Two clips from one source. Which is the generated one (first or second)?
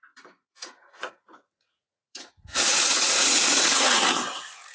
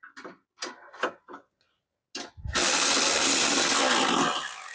first